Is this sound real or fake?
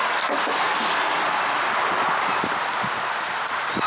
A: fake